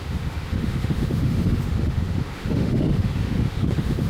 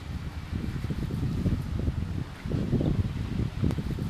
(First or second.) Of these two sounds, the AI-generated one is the first